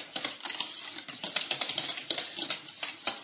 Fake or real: real